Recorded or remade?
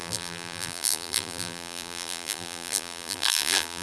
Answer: remade